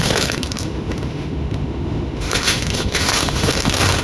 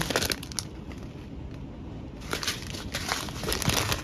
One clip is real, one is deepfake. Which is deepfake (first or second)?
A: first